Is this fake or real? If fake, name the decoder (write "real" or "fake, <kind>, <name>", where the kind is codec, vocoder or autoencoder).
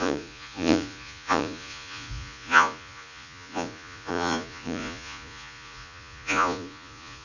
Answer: fake, vocoder, Vocos